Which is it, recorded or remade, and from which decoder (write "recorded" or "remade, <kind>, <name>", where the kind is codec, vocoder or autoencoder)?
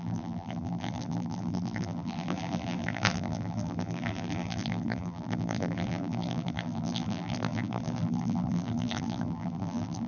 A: remade, vocoder, BigVGAN v2